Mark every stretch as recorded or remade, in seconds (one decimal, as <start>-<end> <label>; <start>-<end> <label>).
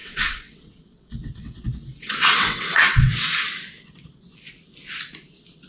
0.0-3.4 remade; 3.4-5.7 recorded